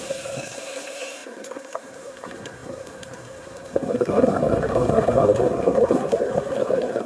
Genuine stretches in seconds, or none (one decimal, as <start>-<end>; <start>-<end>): none